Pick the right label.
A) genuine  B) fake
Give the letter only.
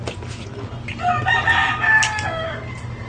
A